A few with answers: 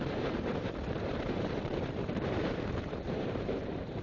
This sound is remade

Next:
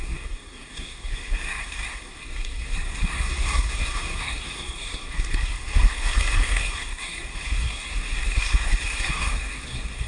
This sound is remade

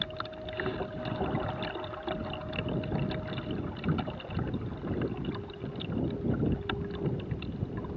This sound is recorded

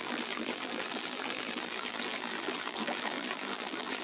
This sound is remade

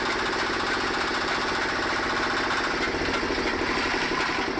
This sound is recorded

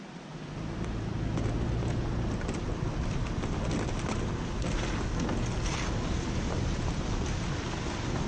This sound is recorded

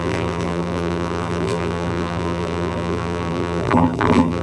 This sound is remade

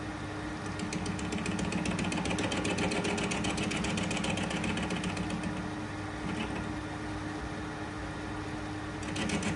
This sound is recorded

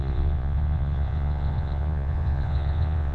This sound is remade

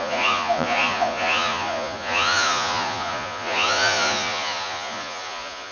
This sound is remade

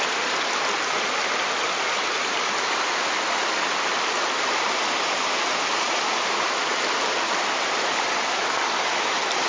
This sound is recorded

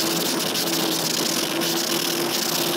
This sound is recorded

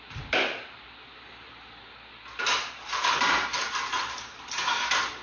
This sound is recorded